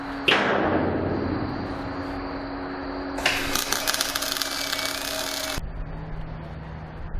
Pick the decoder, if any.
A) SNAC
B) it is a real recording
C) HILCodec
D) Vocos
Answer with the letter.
B